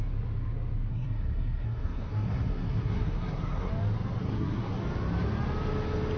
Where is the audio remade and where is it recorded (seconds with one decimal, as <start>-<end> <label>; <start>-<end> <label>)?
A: 0.0-0.9 recorded; 0.9-3.7 remade; 3.7-4.2 recorded; 4.2-4.8 remade; 4.8-6.2 recorded